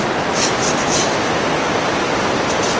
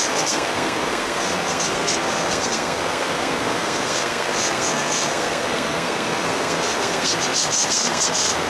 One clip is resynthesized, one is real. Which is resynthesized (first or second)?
second